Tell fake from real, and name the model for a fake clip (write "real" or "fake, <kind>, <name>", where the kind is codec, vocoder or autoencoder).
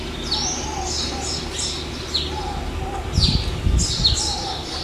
real